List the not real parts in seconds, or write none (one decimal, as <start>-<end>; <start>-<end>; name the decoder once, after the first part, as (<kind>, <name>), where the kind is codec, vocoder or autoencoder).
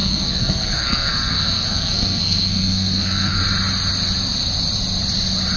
0.0-3.4 (codec, SNAC)